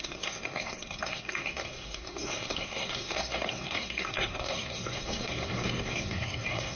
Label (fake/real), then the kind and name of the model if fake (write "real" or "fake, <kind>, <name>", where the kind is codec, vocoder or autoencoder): fake, codec, SNAC